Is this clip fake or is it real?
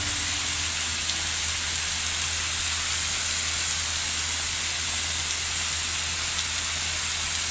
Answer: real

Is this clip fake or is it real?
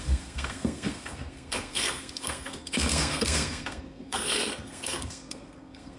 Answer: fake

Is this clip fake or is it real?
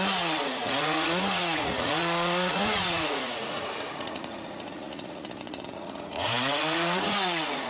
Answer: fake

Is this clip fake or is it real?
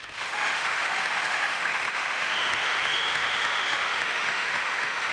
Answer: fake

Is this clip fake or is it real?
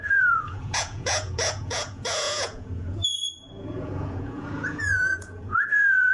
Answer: fake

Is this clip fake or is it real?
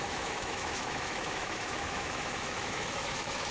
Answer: fake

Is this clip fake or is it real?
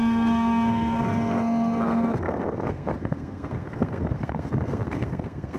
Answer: fake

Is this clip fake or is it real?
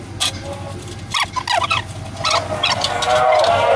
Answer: real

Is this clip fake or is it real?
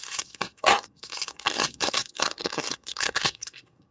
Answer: fake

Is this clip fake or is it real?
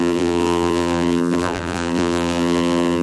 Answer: fake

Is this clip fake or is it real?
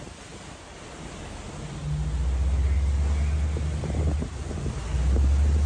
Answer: real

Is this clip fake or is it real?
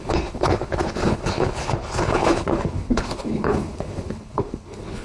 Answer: fake